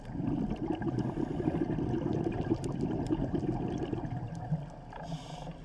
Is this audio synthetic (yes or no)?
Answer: no